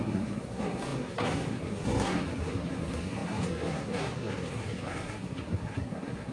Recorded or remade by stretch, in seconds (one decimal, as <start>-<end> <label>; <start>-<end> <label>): 0.0-6.3 remade